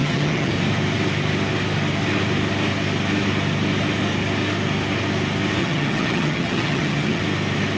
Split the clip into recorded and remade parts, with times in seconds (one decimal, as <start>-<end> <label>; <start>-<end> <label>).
0.0-0.5 remade; 0.5-5.6 recorded; 5.6-7.2 remade; 7.2-7.8 recorded

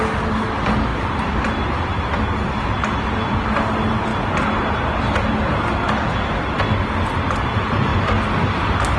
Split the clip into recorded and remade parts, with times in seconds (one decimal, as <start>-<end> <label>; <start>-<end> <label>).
0.0-0.9 recorded; 0.9-1.5 remade; 1.5-9.0 recorded

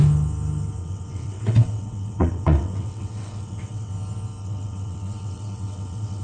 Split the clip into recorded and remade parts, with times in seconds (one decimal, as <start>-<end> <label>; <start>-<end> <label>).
0.0-0.8 recorded; 0.8-3.9 remade; 3.9-4.4 recorded; 4.4-6.2 remade